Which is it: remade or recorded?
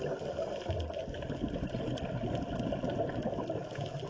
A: recorded